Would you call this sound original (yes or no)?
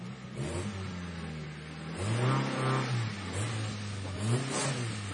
yes